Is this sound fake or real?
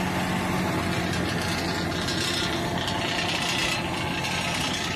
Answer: real